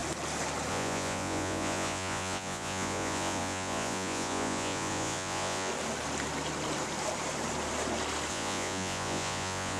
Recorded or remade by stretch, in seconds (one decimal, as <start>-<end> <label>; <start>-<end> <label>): 0.0-0.7 recorded; 0.7-5.7 remade; 5.7-8.3 recorded; 8.3-9.8 remade